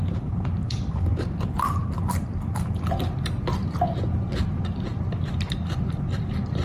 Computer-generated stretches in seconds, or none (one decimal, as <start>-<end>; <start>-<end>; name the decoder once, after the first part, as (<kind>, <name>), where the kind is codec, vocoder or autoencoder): 0.0-1.1 (vocoder, BigVGAN v2); 5.1-6.6